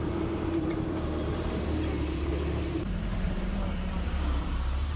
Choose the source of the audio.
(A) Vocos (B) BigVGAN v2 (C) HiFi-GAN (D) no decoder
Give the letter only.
B